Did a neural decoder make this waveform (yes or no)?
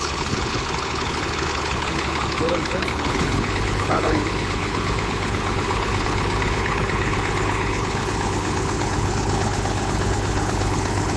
yes